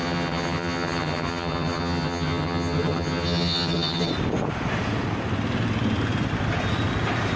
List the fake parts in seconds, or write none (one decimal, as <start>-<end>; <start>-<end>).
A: 0.0-4.1